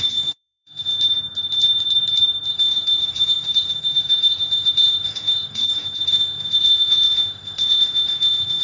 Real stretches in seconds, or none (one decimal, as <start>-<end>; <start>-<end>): 0.9-2.5